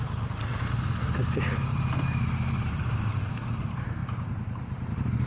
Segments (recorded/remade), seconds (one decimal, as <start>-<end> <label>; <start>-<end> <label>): 0.0-1.7 recorded; 1.7-3.2 remade; 3.2-4.0 recorded; 4.0-5.3 remade